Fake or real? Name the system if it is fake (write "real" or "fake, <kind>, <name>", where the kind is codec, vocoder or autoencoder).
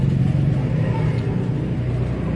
real